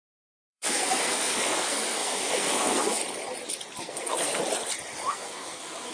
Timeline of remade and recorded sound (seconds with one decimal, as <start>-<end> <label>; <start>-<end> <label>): 0.0-3.0 remade; 3.0-3.8 recorded; 3.8-4.4 remade; 4.4-5.1 recorded; 5.1-5.9 remade